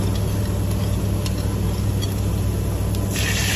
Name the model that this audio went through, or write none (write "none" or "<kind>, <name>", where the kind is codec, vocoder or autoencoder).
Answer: none